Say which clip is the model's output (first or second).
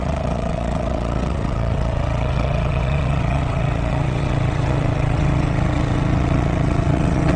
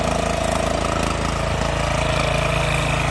first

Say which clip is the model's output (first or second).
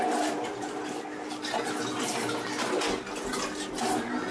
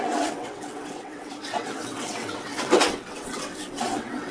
second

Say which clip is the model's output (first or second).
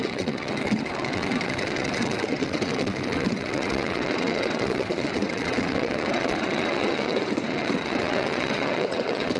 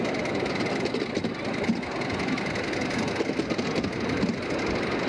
first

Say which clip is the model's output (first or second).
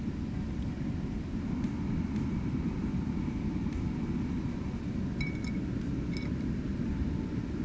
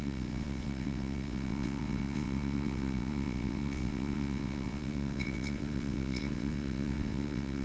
second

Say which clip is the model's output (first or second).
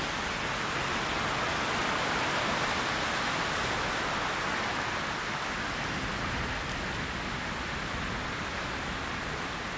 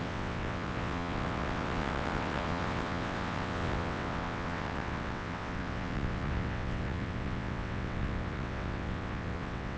second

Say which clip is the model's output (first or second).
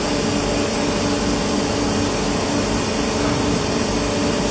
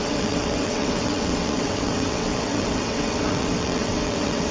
second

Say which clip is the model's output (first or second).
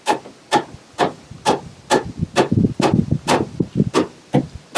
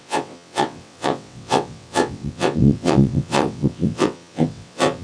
second